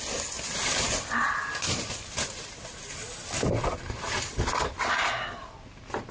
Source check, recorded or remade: recorded